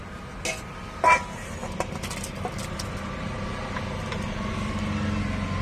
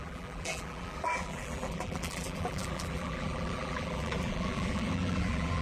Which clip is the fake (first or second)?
second